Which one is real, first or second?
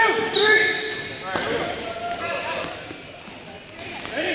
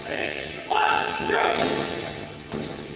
first